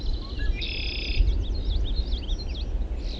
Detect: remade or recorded recorded